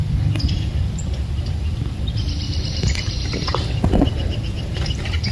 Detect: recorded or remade remade